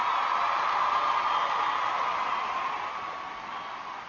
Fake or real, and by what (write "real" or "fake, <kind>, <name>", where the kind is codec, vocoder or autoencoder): real